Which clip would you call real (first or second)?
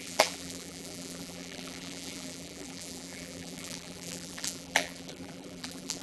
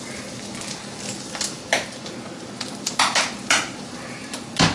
second